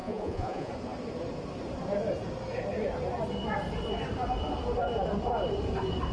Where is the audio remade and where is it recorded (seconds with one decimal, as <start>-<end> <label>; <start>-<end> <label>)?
0.0-0.7 remade; 0.7-6.1 recorded